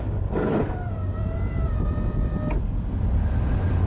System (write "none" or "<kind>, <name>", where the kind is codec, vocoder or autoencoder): vocoder, BigVGAN v2